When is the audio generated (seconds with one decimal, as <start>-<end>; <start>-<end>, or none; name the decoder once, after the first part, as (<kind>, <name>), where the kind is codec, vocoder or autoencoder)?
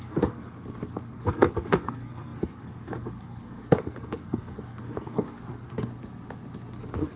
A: 0.0-5.9 (codec, SNAC); 6.8-7.2